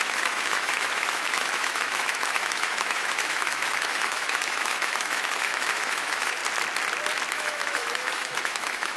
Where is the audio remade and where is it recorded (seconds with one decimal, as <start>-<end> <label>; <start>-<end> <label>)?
0.0-6.4 remade; 6.4-7.3 recorded; 7.3-9.0 remade